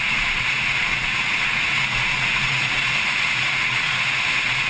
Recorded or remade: remade